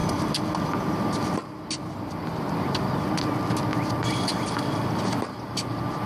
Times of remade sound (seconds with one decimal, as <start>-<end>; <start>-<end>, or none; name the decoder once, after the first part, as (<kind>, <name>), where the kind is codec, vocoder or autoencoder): none